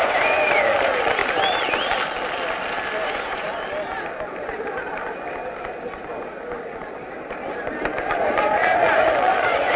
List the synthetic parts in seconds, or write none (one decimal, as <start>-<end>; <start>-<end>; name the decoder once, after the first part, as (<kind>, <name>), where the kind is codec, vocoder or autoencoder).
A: 0.0-1.2 (vocoder, Vocos); 3.0-3.5; 8.0-9.8